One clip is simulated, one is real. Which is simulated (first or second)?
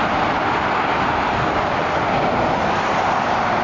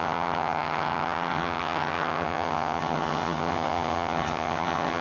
second